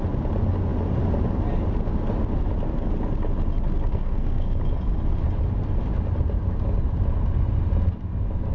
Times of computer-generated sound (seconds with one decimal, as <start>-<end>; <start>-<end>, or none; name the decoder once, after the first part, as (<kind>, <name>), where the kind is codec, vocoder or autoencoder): 3.9-4.5 (codec, SNAC)

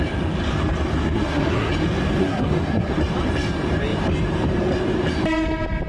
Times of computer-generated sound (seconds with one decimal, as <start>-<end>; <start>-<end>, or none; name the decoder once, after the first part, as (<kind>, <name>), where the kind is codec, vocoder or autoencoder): 1.0-1.7 (codec, SNAC); 2.2-2.9

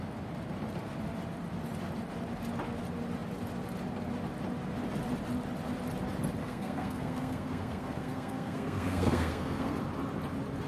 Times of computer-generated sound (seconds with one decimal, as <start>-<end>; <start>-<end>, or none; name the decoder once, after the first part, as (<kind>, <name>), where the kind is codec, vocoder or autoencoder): 6.4-9.8 (codec, SNAC)

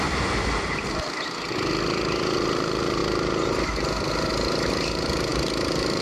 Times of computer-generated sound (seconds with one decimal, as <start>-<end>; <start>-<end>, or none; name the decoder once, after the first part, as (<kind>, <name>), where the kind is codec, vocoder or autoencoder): none

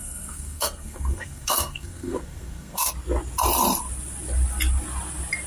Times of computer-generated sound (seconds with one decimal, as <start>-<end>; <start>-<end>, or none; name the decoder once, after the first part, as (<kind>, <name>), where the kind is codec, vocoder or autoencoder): 0.0-2.9 (codec, SNAC)

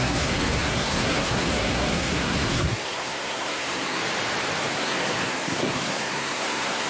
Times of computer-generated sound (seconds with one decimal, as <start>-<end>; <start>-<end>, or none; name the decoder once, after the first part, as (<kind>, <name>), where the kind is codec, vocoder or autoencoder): 0.0-4.0 (codec, SNAC); 4.7-6.9

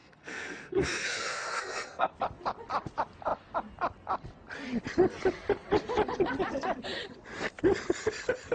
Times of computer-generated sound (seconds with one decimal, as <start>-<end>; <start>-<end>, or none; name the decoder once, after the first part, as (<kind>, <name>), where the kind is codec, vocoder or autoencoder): 0.0-2.1 (codec, SNAC)